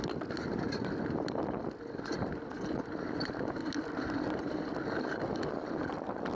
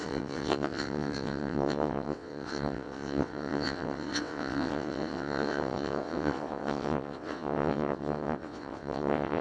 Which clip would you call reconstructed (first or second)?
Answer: second